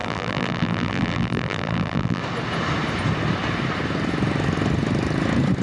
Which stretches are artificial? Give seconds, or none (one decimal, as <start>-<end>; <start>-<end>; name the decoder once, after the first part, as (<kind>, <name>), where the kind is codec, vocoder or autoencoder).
0.0-2.2 (vocoder, BigVGAN v2)